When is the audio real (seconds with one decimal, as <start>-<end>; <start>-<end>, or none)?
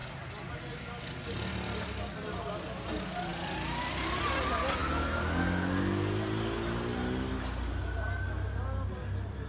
0.0-9.5